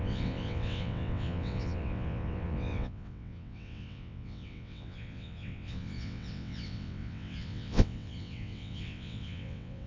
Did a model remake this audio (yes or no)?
yes